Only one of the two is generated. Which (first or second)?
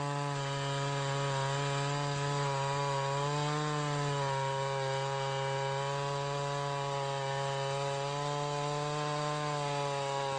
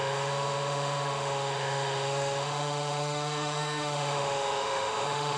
second